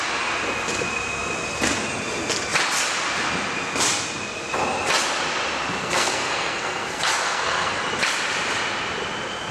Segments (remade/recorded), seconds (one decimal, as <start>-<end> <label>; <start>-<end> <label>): 0.0-5.8 recorded; 5.8-7.8 remade; 7.8-9.5 recorded

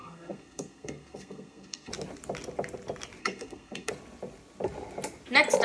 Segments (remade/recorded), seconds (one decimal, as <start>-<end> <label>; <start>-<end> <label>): 0.0-1.9 remade; 1.9-3.2 recorded; 3.2-3.9 remade; 3.9-5.6 recorded

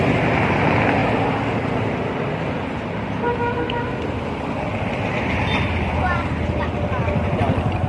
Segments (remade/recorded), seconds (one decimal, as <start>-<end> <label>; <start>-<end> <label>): 0.0-7.9 remade

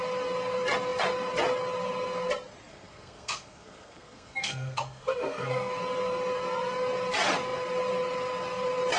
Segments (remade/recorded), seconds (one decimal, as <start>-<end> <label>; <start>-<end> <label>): 0.0-2.7 recorded; 2.7-5.7 remade; 5.7-9.0 recorded